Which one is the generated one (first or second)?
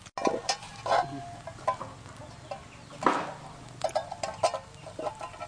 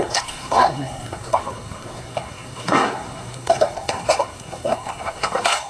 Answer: second